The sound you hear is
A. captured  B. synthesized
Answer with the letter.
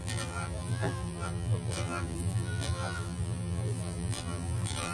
B